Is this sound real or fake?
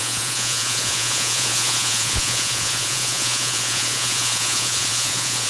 fake